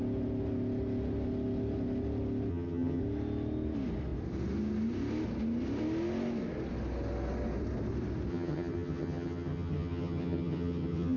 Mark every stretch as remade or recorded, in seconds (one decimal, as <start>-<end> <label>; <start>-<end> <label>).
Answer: 0.0-2.5 recorded; 2.5-3.0 remade; 3.0-8.3 recorded; 8.3-11.2 remade